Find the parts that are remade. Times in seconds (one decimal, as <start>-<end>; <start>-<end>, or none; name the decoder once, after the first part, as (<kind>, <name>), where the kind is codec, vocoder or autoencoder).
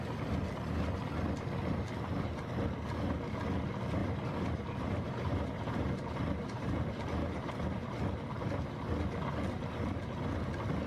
4.0-7.9 (vocoder, BigVGAN v2)